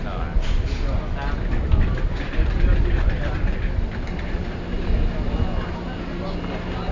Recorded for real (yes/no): yes